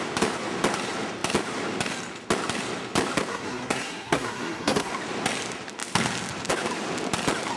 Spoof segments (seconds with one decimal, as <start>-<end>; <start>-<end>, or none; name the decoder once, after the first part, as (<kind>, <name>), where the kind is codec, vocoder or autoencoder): 3.3-4.9 (codec, SNAC)